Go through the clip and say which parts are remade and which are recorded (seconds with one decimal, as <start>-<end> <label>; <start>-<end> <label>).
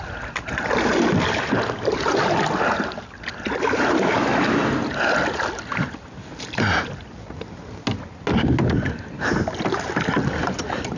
0.0-11.0 recorded